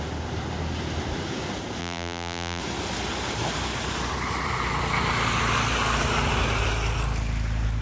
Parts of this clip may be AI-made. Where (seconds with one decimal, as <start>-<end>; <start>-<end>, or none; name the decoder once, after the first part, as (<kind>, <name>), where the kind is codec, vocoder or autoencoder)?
1.8-2.6 (vocoder, BigVGAN v2)